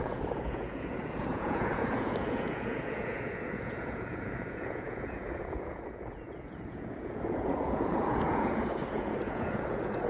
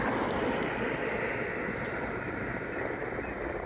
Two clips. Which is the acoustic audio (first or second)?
second